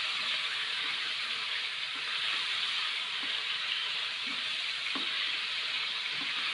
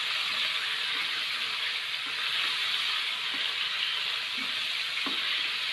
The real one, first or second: second